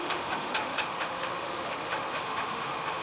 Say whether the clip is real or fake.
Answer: fake